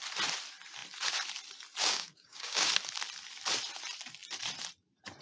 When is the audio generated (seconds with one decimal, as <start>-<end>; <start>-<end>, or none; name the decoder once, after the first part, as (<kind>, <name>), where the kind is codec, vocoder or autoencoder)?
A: 1.8-2.7 (codec, DAC)